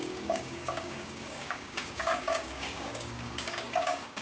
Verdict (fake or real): fake